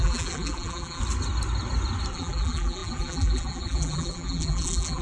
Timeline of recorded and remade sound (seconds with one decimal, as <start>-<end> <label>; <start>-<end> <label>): 0.0-1.0 remade; 1.0-2.1 recorded; 2.1-5.0 remade